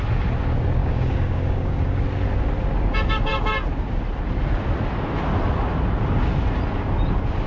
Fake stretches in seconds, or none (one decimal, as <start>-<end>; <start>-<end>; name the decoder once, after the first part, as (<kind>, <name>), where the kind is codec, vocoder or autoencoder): 0.8-2.0 (codec, DAC)